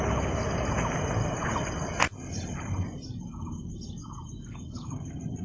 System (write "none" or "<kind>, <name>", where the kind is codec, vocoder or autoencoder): none